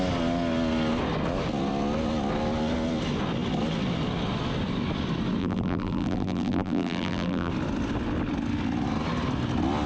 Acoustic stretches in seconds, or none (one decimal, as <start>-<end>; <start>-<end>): 0.0-5.4; 7.5-9.9